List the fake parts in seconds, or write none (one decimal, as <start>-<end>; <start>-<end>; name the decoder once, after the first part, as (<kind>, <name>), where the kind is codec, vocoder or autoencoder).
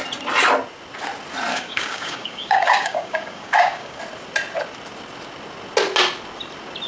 1.5-4.0 (codec, DAC)